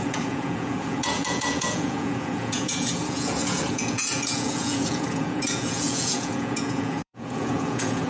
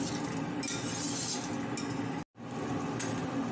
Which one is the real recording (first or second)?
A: second